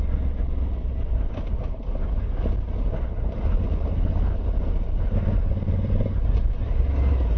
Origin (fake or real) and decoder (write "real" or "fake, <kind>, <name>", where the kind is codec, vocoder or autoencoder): real